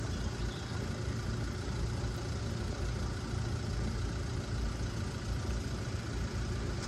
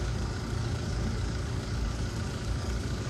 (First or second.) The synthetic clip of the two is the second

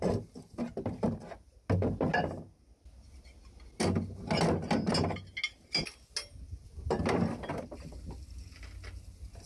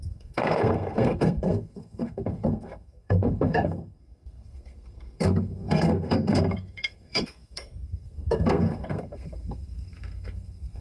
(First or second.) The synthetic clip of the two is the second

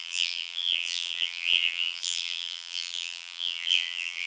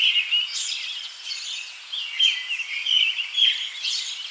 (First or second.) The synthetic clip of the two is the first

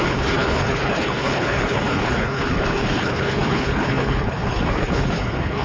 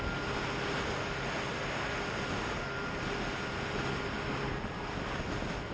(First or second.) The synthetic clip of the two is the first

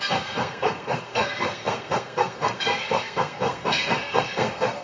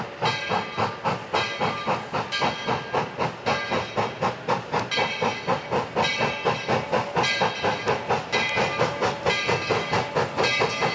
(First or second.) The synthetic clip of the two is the first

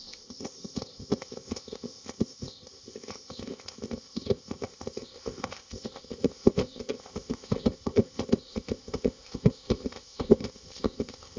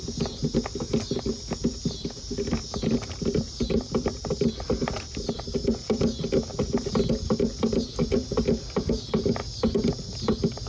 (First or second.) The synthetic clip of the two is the first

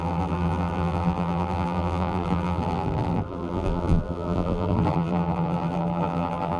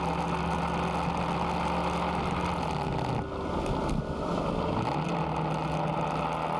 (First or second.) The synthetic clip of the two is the first